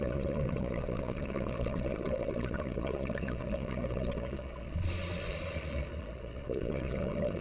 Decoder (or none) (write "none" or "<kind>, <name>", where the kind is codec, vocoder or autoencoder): vocoder, Vocos